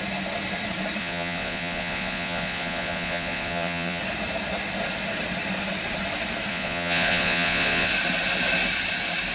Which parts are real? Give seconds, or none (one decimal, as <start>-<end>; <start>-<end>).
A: 0.0-1.0; 4.0-6.5; 7.9-9.3